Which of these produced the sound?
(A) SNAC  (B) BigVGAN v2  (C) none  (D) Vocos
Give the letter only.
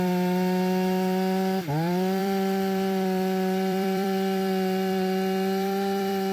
B